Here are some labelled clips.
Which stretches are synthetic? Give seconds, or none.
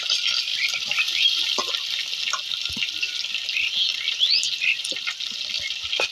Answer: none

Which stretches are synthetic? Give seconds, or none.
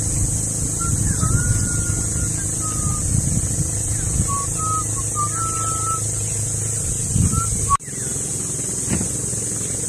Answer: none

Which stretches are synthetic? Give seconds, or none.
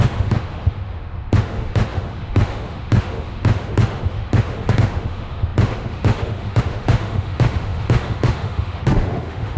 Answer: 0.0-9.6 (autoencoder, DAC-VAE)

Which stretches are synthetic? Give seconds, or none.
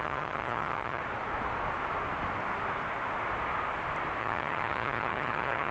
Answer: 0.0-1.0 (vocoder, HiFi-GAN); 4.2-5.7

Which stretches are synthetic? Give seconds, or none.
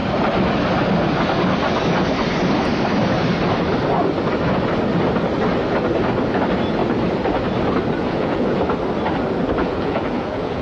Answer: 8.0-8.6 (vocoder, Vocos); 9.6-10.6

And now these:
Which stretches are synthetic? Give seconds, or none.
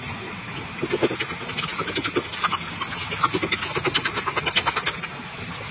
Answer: none